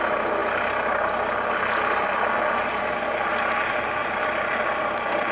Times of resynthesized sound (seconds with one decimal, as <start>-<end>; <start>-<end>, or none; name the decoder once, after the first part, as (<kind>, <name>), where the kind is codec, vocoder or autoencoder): none